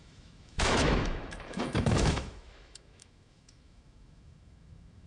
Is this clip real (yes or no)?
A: no